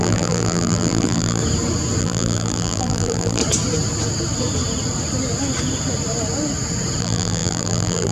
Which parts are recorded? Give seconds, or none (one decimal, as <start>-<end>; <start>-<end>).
1.4-2.0; 3.4-7.0